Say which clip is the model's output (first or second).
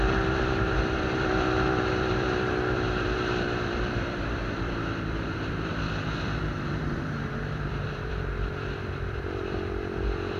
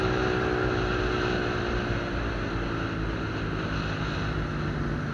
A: first